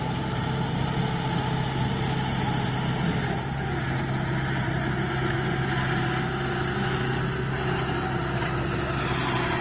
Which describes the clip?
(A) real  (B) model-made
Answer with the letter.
A